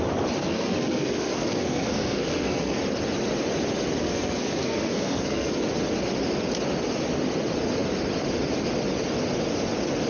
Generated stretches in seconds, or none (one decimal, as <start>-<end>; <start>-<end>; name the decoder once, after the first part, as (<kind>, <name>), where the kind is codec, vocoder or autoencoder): 0.4-2.8 (codec, SNAC); 4.0-5.6